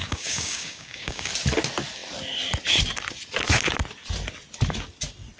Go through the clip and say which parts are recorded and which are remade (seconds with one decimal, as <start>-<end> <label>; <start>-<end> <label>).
0.0-1.3 remade; 1.3-5.4 recorded

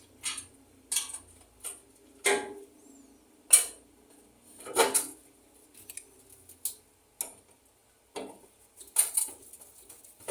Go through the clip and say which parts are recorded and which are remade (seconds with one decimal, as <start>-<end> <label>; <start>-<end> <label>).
0.0-10.3 recorded

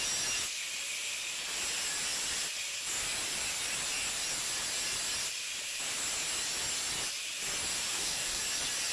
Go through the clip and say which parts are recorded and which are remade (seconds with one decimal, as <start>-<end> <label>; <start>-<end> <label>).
0.0-7.9 recorded; 7.9-8.4 remade; 8.4-8.9 recorded

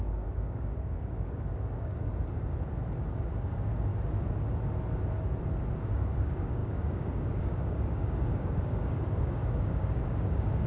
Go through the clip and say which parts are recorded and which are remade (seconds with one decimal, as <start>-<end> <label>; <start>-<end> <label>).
0.0-2.1 remade; 2.1-3.0 recorded; 3.0-3.9 remade; 3.9-5.8 recorded; 5.8-10.7 remade

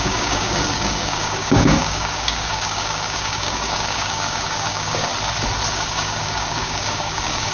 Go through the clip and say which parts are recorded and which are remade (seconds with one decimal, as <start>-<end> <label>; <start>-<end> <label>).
0.0-5.1 remade; 5.1-5.7 recorded; 5.7-7.5 remade